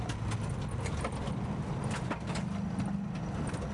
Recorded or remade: recorded